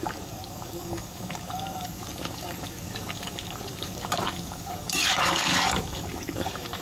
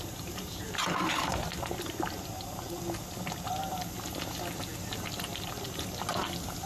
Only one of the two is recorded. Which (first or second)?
second